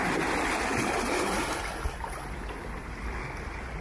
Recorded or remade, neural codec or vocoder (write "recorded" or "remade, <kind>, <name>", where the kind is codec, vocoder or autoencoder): recorded